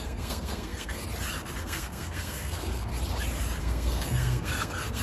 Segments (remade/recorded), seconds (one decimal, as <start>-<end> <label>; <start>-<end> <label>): 0.0-1.0 remade; 1.0-1.6 recorded; 1.6-2.9 remade; 2.9-3.6 recorded; 3.6-5.0 remade